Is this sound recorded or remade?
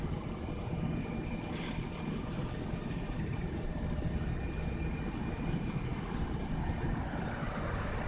remade